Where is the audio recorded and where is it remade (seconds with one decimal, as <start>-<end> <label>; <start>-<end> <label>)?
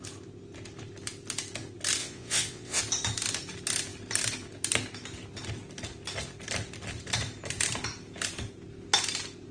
0.0-2.0 recorded; 2.0-2.8 remade; 2.8-9.5 recorded